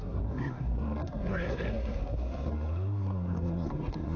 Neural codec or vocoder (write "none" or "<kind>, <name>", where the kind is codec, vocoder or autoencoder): codec, SNAC